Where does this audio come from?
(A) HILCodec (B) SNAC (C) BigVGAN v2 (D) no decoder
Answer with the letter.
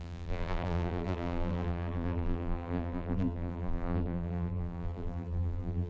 C